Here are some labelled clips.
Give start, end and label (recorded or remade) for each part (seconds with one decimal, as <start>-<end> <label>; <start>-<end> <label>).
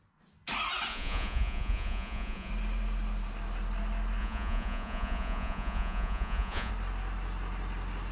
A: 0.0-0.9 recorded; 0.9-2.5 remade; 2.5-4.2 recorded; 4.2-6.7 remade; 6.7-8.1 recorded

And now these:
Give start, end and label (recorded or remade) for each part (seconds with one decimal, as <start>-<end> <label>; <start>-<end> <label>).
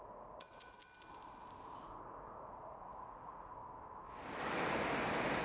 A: 0.0-0.8 remade; 0.8-1.6 recorded; 1.6-3.6 remade; 3.6-5.4 recorded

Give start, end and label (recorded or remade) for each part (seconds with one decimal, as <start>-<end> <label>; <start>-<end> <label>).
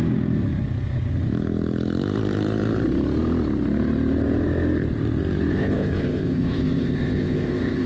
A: 0.0-5.5 recorded; 5.5-7.9 remade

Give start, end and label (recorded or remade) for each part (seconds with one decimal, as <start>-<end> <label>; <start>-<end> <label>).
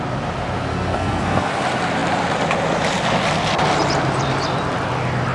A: 0.0-0.7 recorded; 0.7-1.5 remade; 1.5-5.3 recorded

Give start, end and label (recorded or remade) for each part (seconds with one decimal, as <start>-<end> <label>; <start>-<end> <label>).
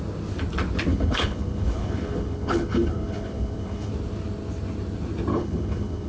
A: 0.0-0.9 recorded; 0.9-3.9 remade; 3.9-5.3 recorded; 5.3-6.1 remade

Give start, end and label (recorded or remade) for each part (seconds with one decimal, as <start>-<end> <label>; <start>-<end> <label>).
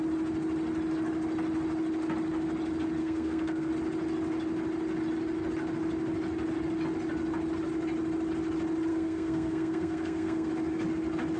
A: 0.0-3.0 recorded; 3.0-3.7 remade; 3.7-8.9 recorded; 8.9-10.5 remade; 10.5-11.4 recorded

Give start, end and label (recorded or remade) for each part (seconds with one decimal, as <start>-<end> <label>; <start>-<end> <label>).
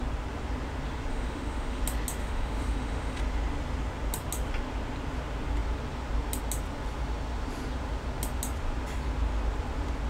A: 0.0-1.1 recorded; 1.1-1.8 remade; 1.8-2.2 recorded; 2.2-3.2 remade; 3.2-10.1 recorded